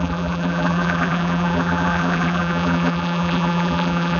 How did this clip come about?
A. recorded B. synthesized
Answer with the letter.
B